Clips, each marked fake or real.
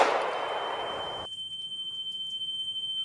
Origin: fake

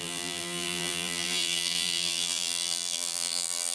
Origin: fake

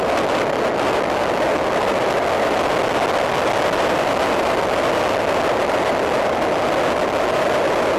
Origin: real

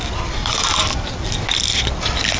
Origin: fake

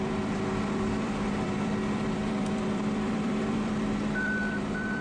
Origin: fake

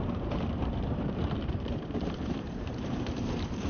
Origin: fake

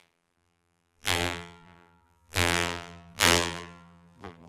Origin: fake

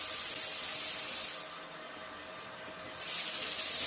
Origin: real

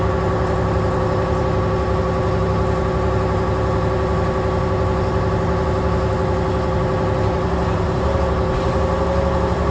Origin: real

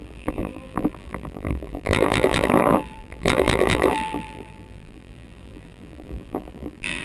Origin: fake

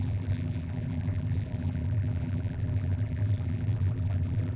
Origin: fake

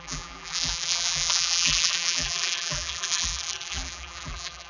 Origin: fake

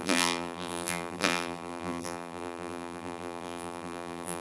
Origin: fake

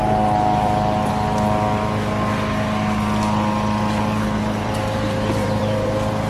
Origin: fake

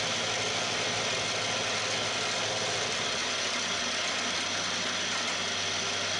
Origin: real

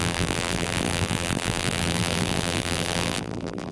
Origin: fake